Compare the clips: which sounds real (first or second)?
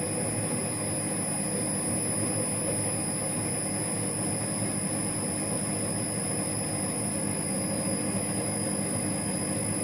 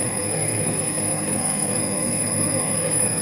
first